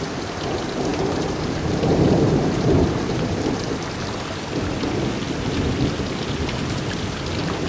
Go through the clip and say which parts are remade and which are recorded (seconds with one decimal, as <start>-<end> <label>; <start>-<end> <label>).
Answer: 0.0-0.9 recorded; 0.9-3.8 remade; 3.8-7.7 recorded